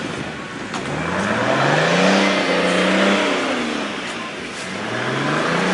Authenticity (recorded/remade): recorded